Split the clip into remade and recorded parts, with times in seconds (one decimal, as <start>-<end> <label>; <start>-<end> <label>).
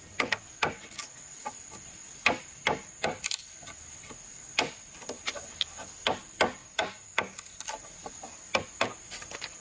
0.0-6.6 recorded; 6.6-7.5 remade; 7.5-9.6 recorded